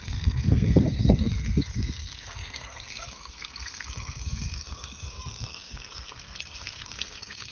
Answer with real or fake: fake